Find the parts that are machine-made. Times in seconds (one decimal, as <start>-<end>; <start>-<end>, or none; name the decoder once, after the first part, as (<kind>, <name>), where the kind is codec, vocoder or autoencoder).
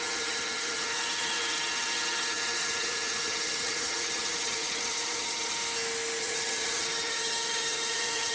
0.0-5.6 (vocoder, HiFi-GAN); 6.2-8.3